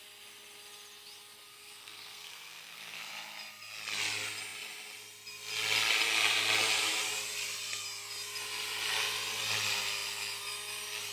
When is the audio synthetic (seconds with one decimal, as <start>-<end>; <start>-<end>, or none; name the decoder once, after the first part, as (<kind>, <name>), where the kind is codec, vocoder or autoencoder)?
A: 1.5-3.1 (codec, SNAC)